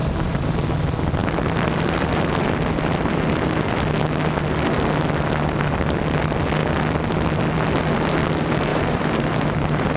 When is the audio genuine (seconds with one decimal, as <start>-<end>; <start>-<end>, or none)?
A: 0.6-8.7